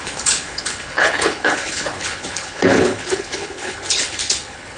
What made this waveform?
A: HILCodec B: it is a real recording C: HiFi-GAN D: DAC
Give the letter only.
A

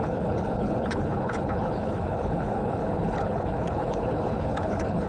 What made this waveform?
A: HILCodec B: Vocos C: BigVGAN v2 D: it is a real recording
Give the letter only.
A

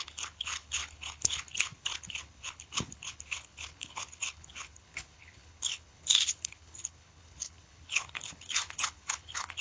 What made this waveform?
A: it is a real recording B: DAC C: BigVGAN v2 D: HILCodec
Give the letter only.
D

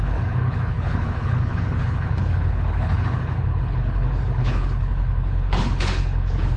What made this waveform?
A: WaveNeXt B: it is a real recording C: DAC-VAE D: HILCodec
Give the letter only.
D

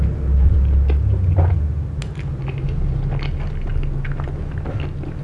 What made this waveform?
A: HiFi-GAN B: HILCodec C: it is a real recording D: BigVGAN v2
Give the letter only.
C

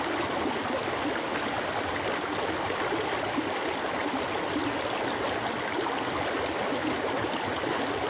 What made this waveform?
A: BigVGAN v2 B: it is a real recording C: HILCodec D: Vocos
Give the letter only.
B